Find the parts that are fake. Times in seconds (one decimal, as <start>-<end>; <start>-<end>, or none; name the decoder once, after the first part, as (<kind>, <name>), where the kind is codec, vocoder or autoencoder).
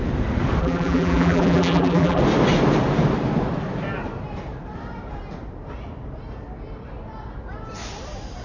0.6-2.2 (vocoder, BigVGAN v2)